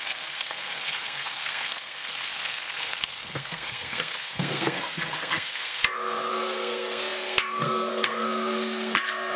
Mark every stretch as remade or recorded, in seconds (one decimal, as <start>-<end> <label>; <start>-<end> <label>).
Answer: 0.0-9.4 remade